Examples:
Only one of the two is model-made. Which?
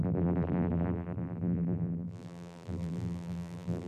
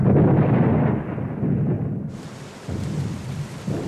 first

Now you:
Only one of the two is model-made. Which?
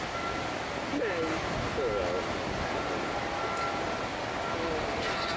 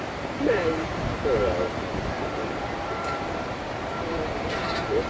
second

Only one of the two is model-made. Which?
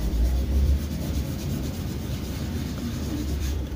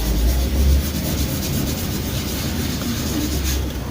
first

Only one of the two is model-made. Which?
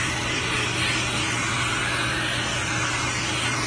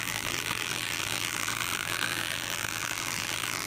second